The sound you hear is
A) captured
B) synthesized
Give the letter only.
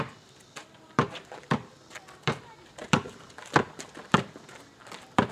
B